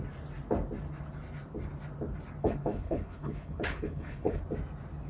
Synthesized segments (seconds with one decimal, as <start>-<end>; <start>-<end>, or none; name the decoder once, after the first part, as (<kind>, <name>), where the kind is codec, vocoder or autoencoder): 2.4-4.4 (codec, HILCodec)